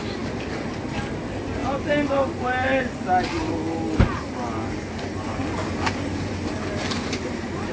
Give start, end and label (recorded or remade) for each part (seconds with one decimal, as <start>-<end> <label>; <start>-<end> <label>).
0.0-7.7 recorded